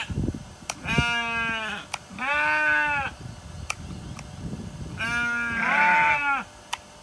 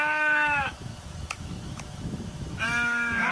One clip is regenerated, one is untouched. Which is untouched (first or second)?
first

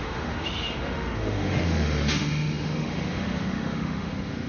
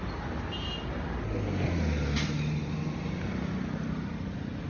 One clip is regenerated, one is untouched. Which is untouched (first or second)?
second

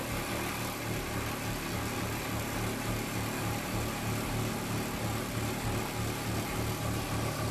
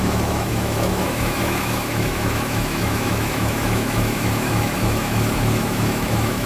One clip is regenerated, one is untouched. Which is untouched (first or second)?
first